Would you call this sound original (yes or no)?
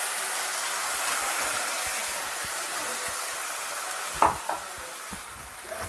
yes